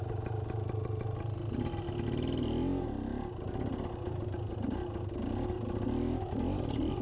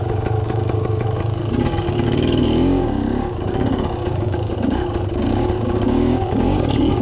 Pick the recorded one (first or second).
first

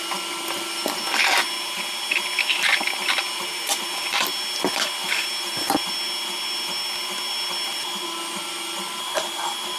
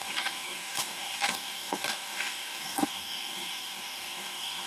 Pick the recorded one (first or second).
first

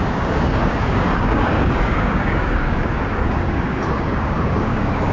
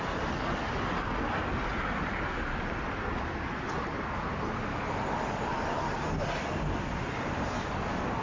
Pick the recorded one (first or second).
second